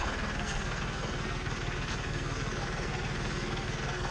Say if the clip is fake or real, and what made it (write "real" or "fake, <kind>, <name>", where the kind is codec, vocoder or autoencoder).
fake, codec, SNAC